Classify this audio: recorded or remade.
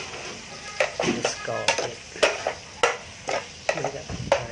recorded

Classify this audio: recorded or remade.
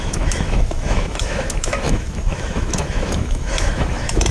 remade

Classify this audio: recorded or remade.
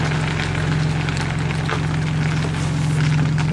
recorded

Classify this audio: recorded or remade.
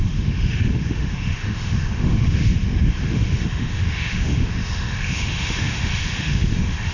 remade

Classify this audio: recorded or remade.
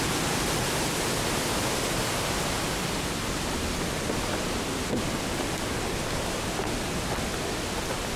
recorded